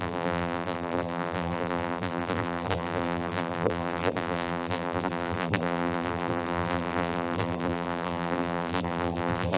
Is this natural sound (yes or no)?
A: no